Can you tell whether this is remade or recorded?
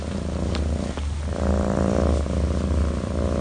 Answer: recorded